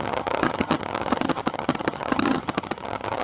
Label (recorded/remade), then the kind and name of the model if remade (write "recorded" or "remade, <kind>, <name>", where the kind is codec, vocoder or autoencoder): remade, vocoder, HiFi-GAN